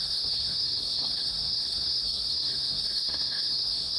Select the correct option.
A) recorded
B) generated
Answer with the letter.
B